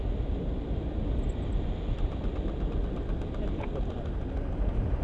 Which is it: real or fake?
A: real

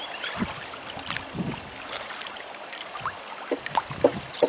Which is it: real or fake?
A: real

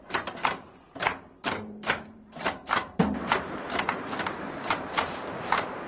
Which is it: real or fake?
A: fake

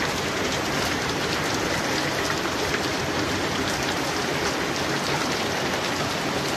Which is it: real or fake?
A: fake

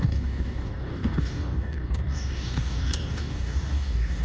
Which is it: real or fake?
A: fake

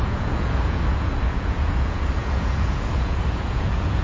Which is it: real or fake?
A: fake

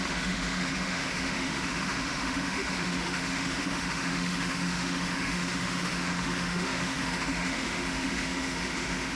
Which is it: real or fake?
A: fake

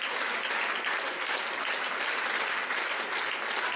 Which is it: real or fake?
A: real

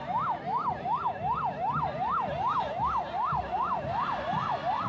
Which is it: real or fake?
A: real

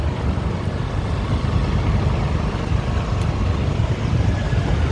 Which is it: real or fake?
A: real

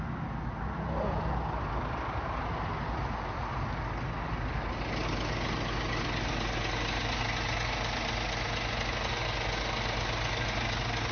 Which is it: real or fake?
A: real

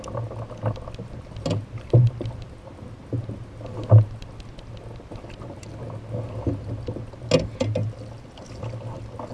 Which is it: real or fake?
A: real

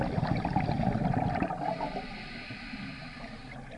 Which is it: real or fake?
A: real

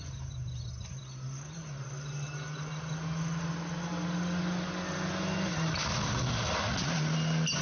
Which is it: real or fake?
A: real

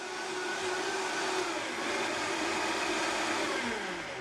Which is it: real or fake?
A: real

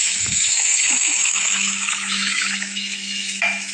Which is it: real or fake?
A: fake